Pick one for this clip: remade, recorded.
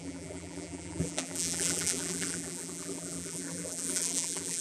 remade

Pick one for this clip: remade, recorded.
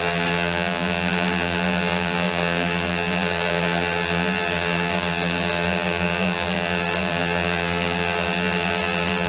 remade